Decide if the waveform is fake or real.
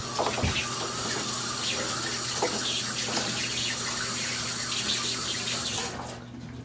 real